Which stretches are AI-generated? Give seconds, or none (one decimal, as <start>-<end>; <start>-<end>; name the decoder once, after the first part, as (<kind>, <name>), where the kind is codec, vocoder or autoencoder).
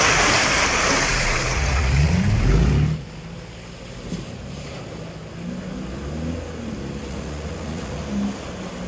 1.1-2.1 (vocoder, Vocos); 7.0-8.0